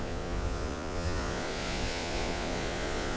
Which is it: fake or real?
fake